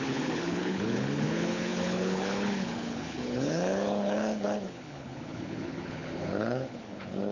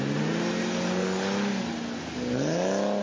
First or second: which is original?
second